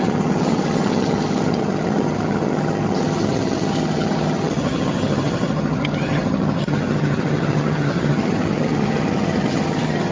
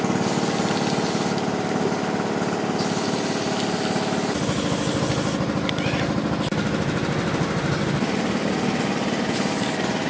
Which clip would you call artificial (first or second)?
first